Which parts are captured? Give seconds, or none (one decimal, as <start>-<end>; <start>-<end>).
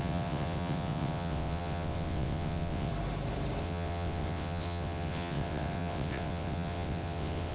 2.9-3.6